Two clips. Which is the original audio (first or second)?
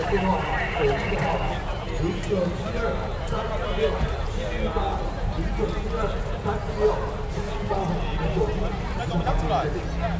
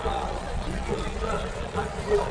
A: first